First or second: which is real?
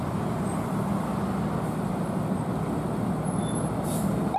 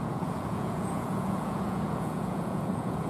first